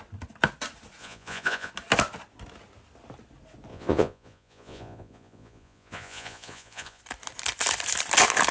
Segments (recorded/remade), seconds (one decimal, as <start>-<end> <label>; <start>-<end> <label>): 0.0-1.0 recorded; 1.0-1.7 remade; 1.7-3.7 recorded; 3.7-7.0 remade; 7.0-8.5 recorded